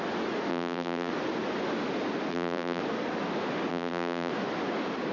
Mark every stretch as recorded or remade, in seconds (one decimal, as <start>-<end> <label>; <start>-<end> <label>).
0.0-0.5 recorded; 0.5-1.1 remade; 1.1-2.3 recorded; 2.3-2.8 remade; 2.8-3.7 recorded; 3.7-4.3 remade; 4.3-5.1 recorded

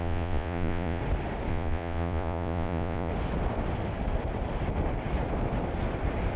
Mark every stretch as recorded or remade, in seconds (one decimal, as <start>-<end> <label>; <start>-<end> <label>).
0.0-1.0 remade; 1.0-1.5 recorded; 1.5-3.1 remade; 3.1-6.4 recorded

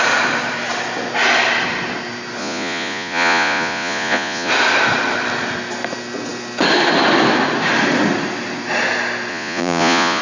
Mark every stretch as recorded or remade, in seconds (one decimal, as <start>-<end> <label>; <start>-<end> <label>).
0.0-2.4 recorded; 2.4-4.5 remade; 4.5-9.3 recorded; 9.3-10.2 remade

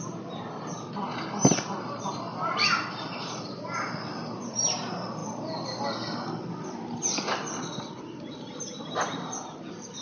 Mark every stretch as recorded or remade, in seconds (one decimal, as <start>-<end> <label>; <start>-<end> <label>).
0.0-10.0 remade

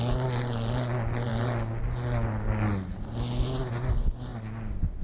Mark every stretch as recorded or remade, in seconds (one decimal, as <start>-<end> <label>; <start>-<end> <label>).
0.0-5.0 recorded

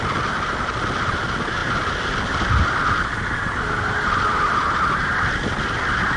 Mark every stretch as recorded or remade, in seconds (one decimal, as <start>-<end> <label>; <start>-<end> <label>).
0.0-6.2 recorded

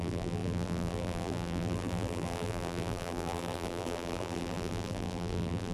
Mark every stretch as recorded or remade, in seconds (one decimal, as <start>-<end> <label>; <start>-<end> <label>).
0.0-5.7 remade

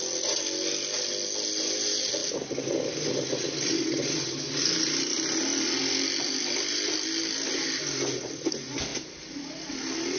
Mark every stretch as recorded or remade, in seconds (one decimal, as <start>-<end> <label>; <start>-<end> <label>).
0.0-10.2 recorded